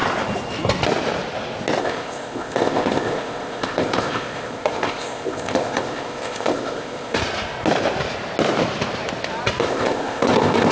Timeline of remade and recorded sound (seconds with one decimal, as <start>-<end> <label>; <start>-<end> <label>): 0.0-1.8 recorded; 1.8-7.2 remade; 7.2-9.6 recorded; 9.6-10.7 remade